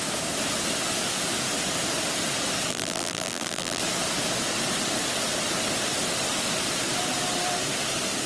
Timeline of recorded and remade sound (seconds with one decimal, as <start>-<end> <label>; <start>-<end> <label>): 0.0-2.7 recorded; 2.7-3.8 remade; 3.8-8.3 recorded